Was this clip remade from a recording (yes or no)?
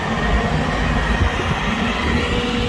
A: no